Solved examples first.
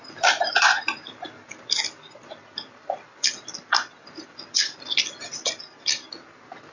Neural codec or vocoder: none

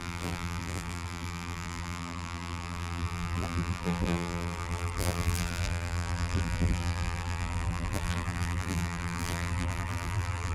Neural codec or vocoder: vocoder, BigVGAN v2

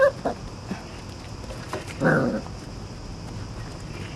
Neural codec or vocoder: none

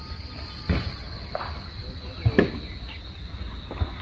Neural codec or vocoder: vocoder, BigVGAN v2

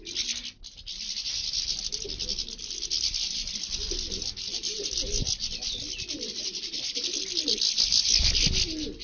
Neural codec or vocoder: vocoder, BigVGAN v2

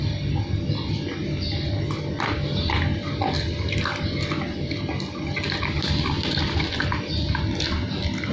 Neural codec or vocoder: none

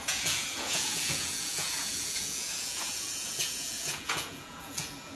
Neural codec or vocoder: vocoder, Vocos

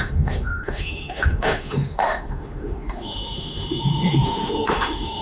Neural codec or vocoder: autoencoder, DAC-VAE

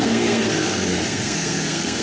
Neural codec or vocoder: codec, SNAC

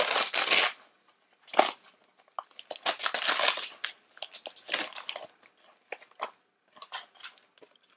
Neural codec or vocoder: none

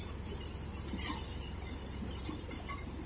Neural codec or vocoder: none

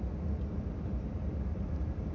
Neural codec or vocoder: vocoder, BigVGAN v2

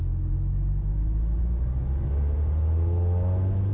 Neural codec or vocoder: none